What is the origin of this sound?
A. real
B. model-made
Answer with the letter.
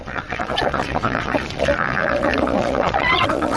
B